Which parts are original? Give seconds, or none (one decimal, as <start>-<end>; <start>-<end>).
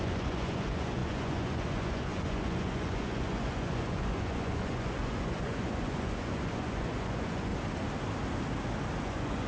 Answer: 7.5-9.0